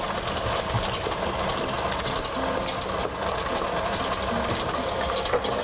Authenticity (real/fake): real